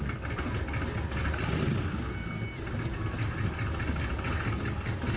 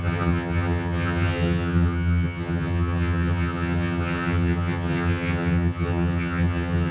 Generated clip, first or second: second